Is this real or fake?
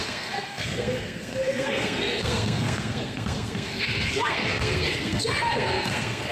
fake